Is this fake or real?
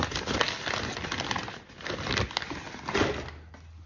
real